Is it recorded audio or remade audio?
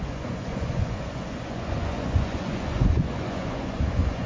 remade